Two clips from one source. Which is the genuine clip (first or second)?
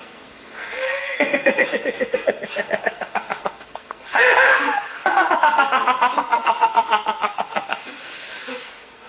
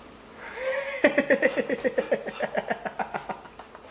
second